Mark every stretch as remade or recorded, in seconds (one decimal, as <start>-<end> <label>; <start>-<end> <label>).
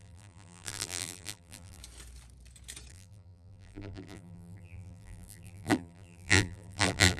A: 0.0-1.8 remade; 1.8-2.9 recorded; 2.9-7.2 remade